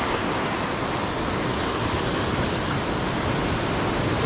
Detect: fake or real real